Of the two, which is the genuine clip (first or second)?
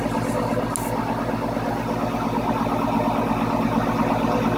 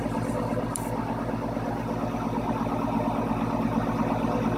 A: first